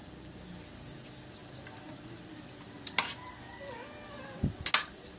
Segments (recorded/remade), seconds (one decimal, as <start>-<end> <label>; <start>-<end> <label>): 0.0-5.2 recorded